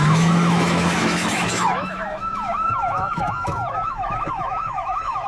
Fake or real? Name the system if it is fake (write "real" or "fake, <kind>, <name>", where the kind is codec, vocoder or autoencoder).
fake, autoencoder, DAC-VAE